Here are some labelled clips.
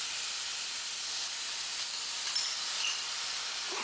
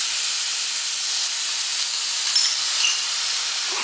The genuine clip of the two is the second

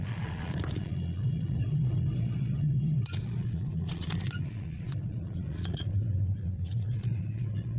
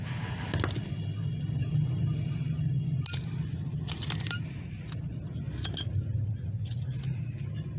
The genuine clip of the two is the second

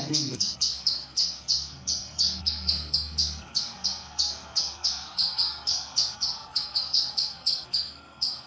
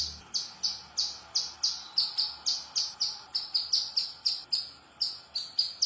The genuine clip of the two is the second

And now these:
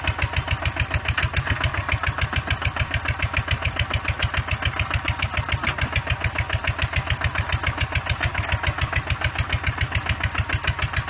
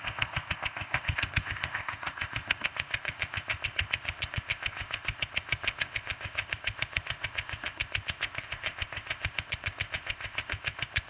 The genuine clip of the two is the first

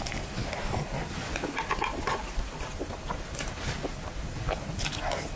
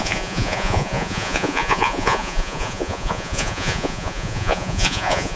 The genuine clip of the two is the first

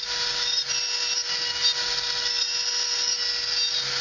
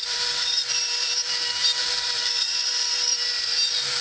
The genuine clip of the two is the first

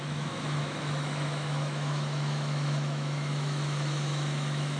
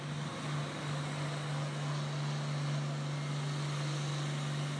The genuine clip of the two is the second